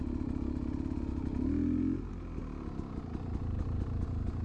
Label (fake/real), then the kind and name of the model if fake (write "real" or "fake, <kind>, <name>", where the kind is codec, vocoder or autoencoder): real